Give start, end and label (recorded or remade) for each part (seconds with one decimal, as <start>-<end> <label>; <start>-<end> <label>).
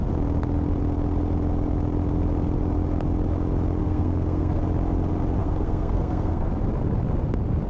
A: 0.0-3.8 recorded; 3.8-4.6 remade; 4.6-5.4 recorded; 5.4-6.5 remade; 6.5-7.7 recorded